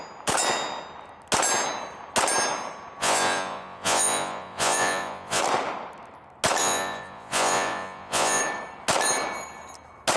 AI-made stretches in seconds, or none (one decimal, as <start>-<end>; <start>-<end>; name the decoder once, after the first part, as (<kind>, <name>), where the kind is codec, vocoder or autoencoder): 3.0-5.4 (vocoder, Vocos); 6.6-8.4